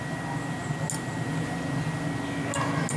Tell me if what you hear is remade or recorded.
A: recorded